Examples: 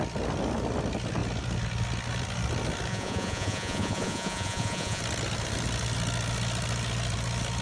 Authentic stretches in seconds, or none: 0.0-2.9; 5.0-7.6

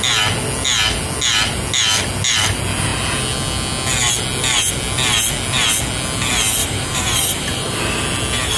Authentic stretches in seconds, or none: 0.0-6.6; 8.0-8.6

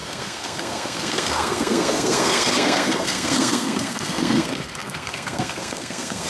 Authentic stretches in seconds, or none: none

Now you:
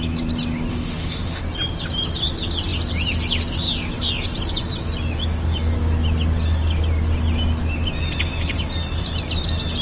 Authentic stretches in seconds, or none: 0.0-0.7; 1.4-9.8